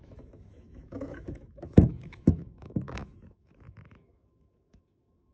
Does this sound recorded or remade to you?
remade